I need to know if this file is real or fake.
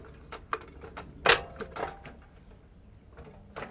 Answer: real